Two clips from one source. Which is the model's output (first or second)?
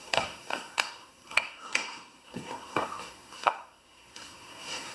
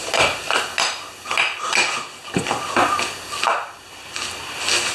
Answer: first